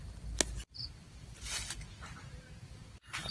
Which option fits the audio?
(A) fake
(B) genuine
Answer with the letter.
B